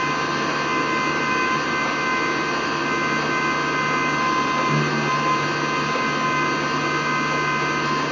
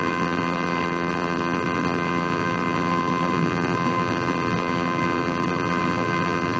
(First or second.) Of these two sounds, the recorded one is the first